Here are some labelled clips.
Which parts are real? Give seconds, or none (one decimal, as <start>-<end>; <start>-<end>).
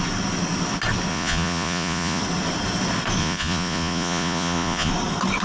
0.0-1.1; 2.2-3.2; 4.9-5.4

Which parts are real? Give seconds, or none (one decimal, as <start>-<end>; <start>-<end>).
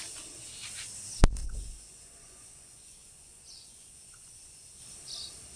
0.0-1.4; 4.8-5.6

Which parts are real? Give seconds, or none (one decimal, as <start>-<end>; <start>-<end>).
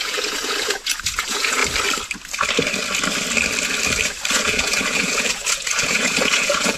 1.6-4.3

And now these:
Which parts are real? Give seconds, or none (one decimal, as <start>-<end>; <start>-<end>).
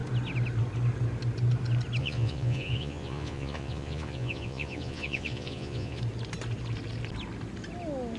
0.0-2.0; 6.0-8.2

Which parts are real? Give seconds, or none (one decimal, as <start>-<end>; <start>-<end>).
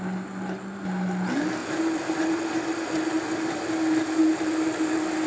0.0-5.3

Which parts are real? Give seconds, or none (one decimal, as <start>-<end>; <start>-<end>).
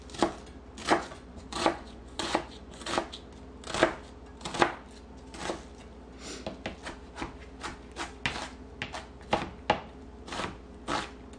0.0-0.9; 2.9-11.4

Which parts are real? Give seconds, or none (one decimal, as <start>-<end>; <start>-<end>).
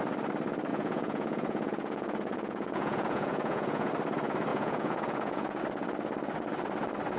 0.0-0.7; 3.9-4.5; 5.6-7.2